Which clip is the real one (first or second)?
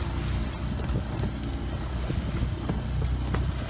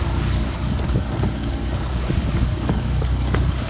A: first